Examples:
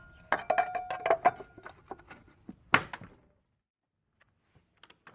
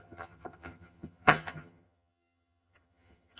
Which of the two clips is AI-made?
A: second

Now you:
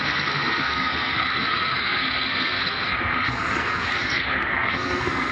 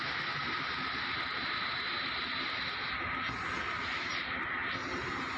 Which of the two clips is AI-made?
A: first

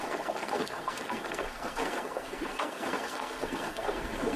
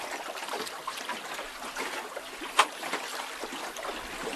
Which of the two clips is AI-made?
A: first